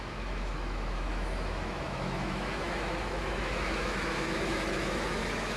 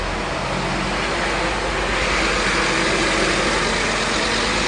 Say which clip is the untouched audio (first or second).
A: second